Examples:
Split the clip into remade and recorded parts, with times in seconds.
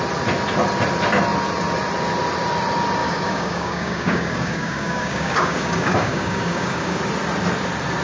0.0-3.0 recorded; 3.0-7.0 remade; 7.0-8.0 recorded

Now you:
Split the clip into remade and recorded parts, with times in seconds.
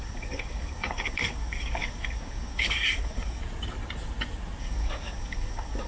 0.0-3.4 remade; 3.4-4.6 recorded; 4.6-5.9 remade